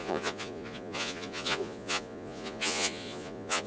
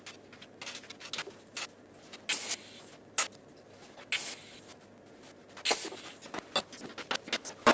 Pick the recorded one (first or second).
second